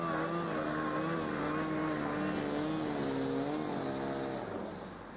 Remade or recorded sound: recorded